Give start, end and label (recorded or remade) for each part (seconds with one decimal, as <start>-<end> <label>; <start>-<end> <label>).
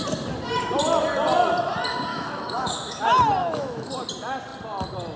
0.0-2.1 recorded; 2.1-3.0 remade; 3.0-3.4 recorded; 3.4-3.9 remade; 3.9-5.2 recorded